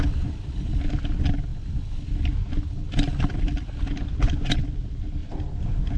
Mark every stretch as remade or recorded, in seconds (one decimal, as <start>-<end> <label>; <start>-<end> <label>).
0.0-6.0 recorded